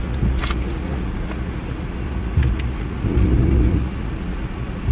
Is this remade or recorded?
remade